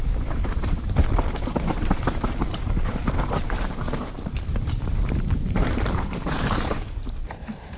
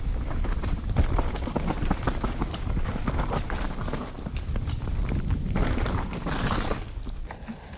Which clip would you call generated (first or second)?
first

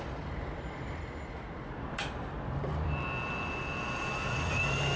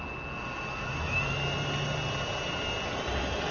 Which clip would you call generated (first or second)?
first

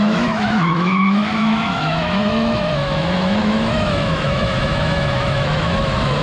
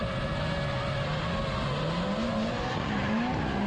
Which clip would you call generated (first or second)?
first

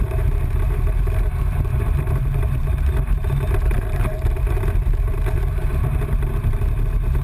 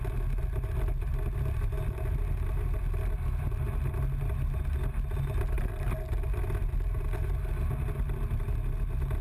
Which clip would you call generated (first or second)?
first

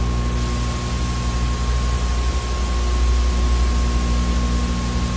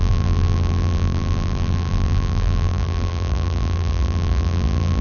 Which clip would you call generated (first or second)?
second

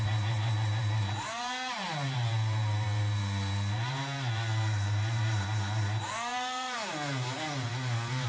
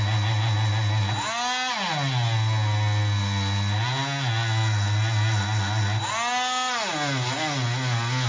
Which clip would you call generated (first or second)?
first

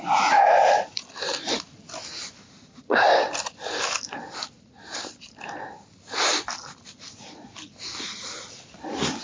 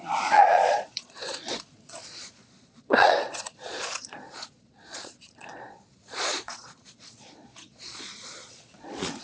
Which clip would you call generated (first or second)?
second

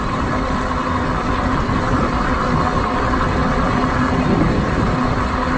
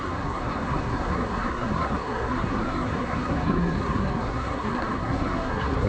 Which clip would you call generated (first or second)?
second